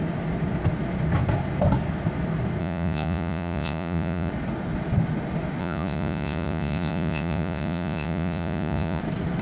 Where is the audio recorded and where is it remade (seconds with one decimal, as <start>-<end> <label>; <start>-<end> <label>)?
0.0-2.6 recorded; 2.6-4.3 remade; 4.3-5.6 recorded; 5.6-9.0 remade; 9.0-9.4 recorded